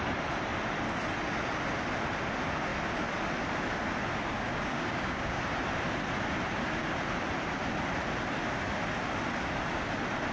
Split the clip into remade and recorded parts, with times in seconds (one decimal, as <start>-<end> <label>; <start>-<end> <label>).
0.0-4.3 recorded; 4.3-5.4 remade; 5.4-10.3 recorded